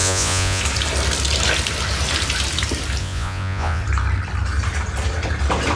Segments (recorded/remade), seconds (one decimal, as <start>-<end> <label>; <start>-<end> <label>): 0.0-0.6 remade; 0.6-3.0 recorded; 3.0-3.8 remade; 3.8-5.8 recorded